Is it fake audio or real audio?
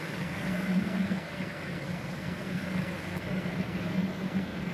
fake